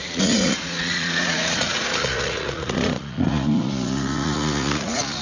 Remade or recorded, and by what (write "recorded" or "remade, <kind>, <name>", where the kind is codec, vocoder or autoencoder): remade, vocoder, Vocos